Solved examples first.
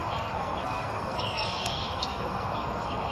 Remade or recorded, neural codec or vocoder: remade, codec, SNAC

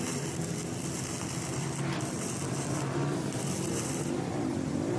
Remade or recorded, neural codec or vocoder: recorded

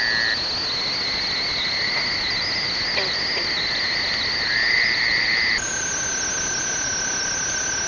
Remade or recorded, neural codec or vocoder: recorded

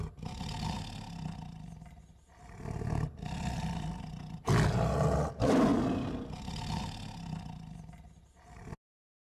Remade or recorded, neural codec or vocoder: recorded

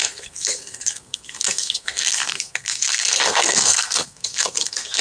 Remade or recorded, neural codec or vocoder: remade, codec, SNAC